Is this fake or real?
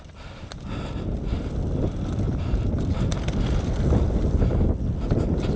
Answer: real